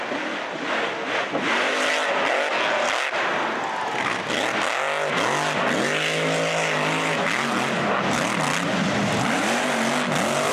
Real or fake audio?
real